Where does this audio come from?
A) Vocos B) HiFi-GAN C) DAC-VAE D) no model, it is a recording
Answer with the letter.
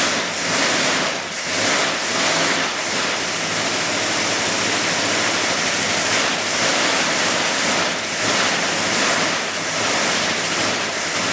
D